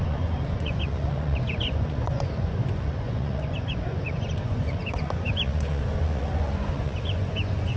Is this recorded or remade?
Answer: remade